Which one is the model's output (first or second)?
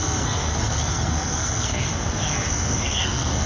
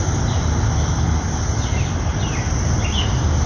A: first